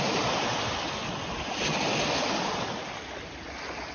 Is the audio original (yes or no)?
yes